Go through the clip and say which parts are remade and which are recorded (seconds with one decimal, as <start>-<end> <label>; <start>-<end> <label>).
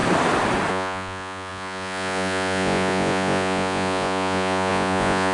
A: 0.0-0.7 recorded; 0.7-5.3 remade